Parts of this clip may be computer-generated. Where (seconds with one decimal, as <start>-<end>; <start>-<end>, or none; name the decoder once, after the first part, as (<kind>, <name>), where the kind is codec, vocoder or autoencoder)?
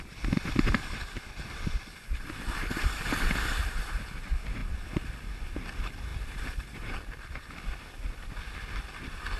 4.6-5.3 (vocoder, BigVGAN v2); 6.1-8.3